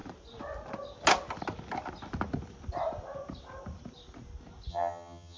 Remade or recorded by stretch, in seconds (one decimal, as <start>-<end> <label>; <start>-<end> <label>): 0.0-4.7 recorded; 4.7-5.4 remade

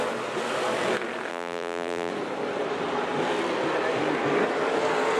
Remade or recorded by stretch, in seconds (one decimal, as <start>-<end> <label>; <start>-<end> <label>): 0.0-1.3 recorded; 1.3-2.1 remade; 2.1-5.2 recorded